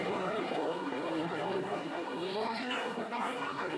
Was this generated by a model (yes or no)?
yes